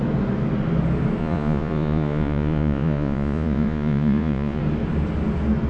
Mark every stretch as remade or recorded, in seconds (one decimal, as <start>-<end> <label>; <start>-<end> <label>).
0.0-1.2 recorded; 1.2-4.6 remade; 4.6-5.7 recorded